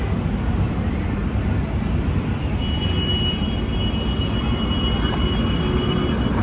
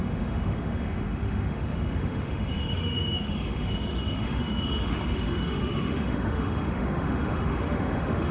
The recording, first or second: first